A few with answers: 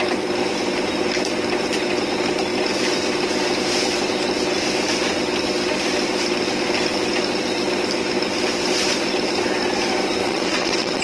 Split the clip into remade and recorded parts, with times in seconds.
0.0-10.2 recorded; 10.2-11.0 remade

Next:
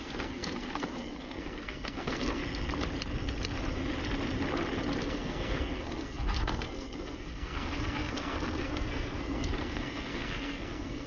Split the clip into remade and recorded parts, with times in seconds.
0.0-2.4 remade; 2.4-5.0 recorded; 5.0-11.1 remade

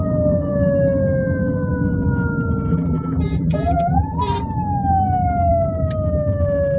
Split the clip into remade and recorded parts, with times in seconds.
0.0-2.7 recorded; 2.7-4.2 remade; 4.2-6.8 recorded

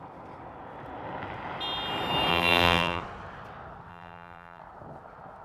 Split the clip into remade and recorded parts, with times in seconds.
0.0-2.3 recorded; 2.3-3.0 remade; 3.0-3.9 recorded; 3.9-4.6 remade; 4.6-5.4 recorded